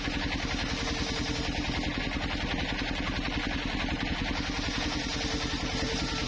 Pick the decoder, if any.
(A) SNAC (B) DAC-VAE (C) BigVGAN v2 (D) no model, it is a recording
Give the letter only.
D